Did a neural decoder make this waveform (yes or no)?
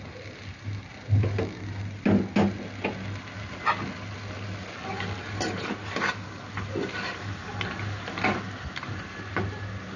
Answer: no